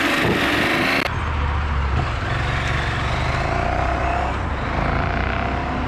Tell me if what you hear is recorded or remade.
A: recorded